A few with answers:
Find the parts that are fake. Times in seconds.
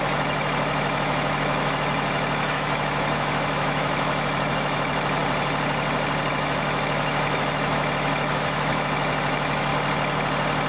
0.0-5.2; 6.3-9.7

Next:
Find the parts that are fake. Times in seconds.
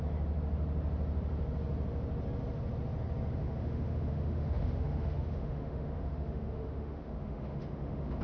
3.4-8.2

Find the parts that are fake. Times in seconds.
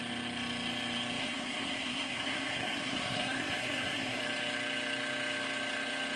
1.2-4.2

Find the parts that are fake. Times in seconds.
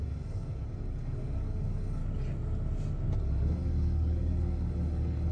0.0-2.0; 3.2-5.3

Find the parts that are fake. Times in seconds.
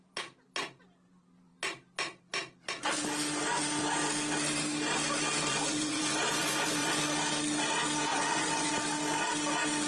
5.5-7.0; 8.1-8.7